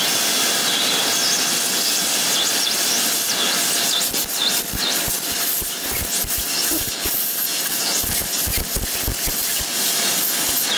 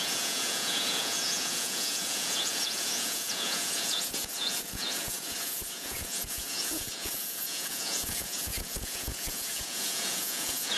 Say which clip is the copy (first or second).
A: second